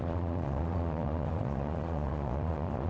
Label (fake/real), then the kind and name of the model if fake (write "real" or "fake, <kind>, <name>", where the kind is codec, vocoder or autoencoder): fake, vocoder, Vocos